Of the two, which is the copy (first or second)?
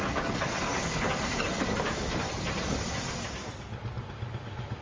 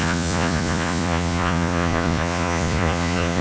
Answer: second